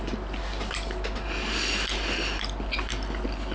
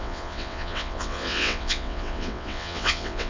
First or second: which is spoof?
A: second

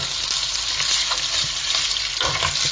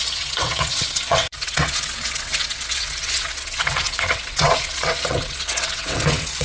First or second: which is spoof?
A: second